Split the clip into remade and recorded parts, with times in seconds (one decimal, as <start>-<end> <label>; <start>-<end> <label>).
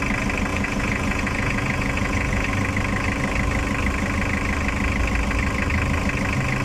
0.0-0.5 recorded; 0.5-2.5 remade; 2.5-6.6 recorded